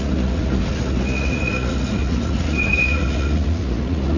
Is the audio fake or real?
fake